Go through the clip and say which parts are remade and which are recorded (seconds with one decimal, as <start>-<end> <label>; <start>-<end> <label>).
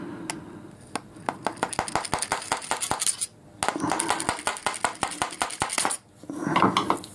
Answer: 0.0-7.1 recorded